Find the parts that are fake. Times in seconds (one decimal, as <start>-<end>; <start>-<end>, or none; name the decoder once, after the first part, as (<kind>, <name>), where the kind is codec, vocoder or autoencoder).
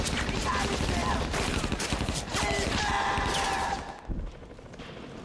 none